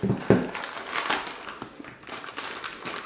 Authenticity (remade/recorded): recorded